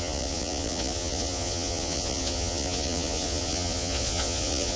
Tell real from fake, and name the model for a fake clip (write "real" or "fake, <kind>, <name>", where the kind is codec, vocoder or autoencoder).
fake, vocoder, Vocos